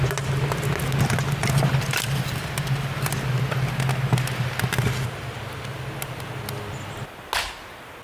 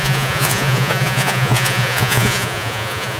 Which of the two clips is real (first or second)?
first